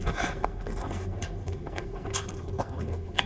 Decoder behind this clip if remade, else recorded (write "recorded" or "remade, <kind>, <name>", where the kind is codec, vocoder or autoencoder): remade, codec, SNAC